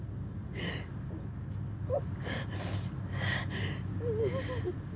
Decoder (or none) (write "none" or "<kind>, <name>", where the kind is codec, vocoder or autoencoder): none